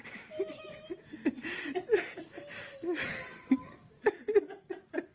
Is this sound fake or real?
real